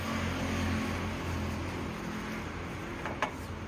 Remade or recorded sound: recorded